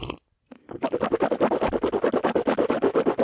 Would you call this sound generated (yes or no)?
no